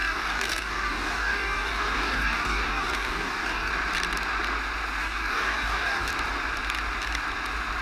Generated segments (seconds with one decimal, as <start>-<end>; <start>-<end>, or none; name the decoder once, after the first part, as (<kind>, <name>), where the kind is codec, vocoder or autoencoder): 0.0-3.7 (codec, DAC); 5.0-6.1